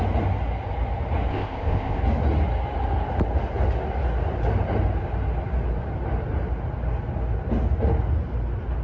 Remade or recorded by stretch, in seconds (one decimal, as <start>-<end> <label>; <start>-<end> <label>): 0.0-1.3 recorded; 1.3-2.0 remade; 2.0-8.8 recorded